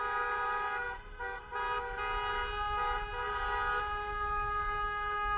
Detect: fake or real real